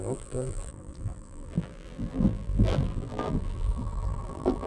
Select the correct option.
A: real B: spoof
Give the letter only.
B